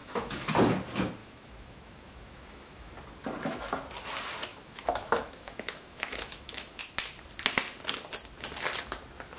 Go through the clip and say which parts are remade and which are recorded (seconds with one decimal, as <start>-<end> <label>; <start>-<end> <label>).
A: 0.0-0.5 remade; 0.5-1.2 recorded; 1.2-2.9 remade; 2.9-4.5 recorded; 4.5-6.8 remade; 6.8-9.4 recorded